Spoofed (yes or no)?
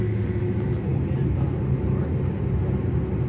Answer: no